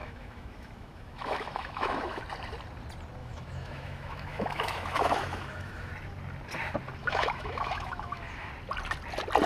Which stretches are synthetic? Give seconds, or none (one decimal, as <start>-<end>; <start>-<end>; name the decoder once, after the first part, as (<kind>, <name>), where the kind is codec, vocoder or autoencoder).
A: 0.0-2.2 (autoencoder, DAC-VAE); 3.2-5.9; 7.0-8.5